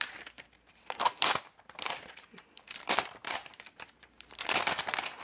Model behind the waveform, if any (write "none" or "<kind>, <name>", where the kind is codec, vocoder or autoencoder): vocoder, BigVGAN v2